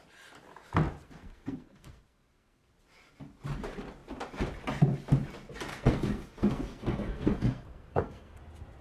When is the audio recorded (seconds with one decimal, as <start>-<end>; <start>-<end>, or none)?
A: 0.0-1.0; 2.7-5.7; 8.4-8.8